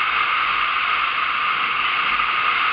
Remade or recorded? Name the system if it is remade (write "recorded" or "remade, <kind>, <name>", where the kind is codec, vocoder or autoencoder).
recorded